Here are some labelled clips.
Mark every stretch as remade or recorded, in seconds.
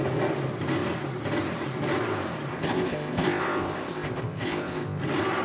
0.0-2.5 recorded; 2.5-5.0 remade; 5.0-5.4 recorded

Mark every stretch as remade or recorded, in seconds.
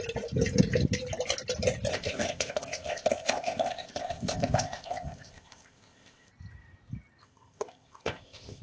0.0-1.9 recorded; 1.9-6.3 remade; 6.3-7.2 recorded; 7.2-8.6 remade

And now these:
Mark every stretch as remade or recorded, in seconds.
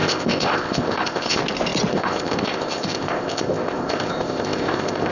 0.0-1.4 remade; 1.4-1.9 recorded; 1.9-5.1 remade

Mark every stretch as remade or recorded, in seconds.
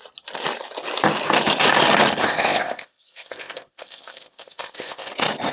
0.0-2.2 recorded; 2.2-5.1 remade; 5.1-5.5 recorded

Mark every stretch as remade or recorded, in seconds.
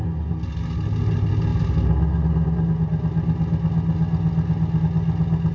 0.0-5.5 recorded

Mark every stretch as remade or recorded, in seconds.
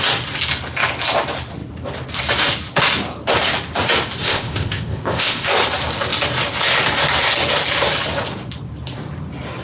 0.0-4.2 recorded; 4.2-5.5 remade; 5.5-9.6 recorded